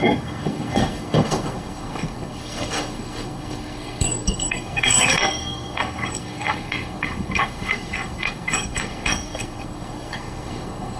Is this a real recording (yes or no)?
no